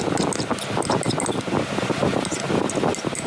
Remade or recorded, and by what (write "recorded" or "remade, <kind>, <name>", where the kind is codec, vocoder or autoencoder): recorded